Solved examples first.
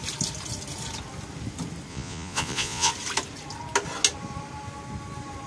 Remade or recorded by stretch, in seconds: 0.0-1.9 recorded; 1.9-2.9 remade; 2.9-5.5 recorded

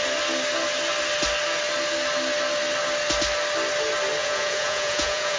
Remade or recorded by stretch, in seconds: 0.0-4.2 recorded; 4.2-5.4 remade

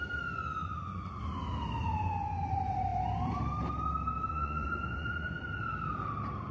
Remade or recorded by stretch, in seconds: 0.0-0.6 recorded; 0.6-1.2 remade; 1.2-4.3 recorded; 4.3-5.4 remade; 5.4-6.5 recorded

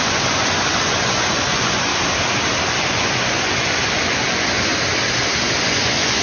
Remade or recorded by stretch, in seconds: 0.0-1.9 remade; 1.9-2.7 recorded; 2.7-4.7 remade; 4.7-5.6 recorded; 5.6-6.2 remade

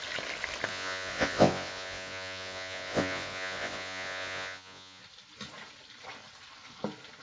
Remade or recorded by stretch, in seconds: 0.0-0.7 recorded; 0.7-5.0 remade; 5.0-7.2 recorded

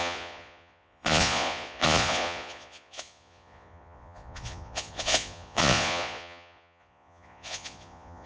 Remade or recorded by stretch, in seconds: 0.0-8.3 remade

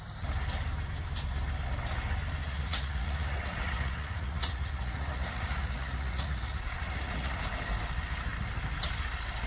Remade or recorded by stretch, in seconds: 0.0-2.4 recorded; 2.4-7.4 remade; 7.4-9.5 recorded